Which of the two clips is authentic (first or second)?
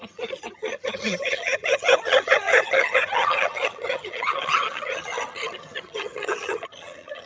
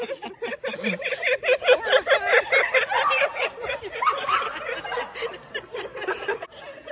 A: second